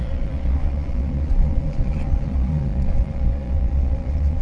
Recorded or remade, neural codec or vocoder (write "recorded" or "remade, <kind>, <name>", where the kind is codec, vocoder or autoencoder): remade, vocoder, Vocos